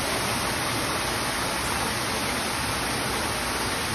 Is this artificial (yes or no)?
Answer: no